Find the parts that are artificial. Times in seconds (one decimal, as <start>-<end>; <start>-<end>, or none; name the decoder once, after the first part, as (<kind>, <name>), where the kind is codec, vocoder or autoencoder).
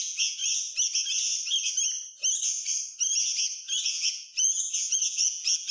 0.0-0.4 (vocoder, Vocos); 3.8-5.7